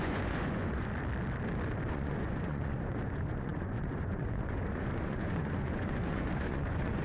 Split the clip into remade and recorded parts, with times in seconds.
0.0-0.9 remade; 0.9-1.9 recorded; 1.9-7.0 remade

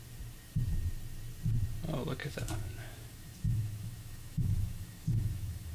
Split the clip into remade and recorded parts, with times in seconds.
0.0-2.2 recorded; 2.2-5.7 remade

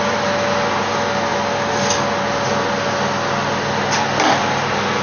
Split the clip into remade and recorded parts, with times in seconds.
0.0-5.0 recorded

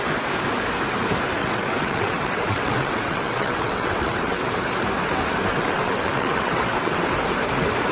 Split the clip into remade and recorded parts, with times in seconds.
0.0-1.4 recorded; 1.4-4.5 remade; 4.5-5.5 recorded; 5.5-7.0 remade; 7.0-7.9 recorded